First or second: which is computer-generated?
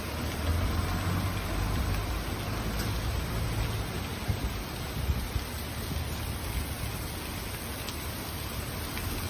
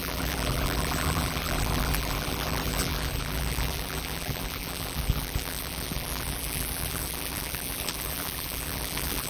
second